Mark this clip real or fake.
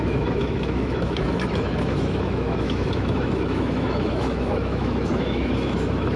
fake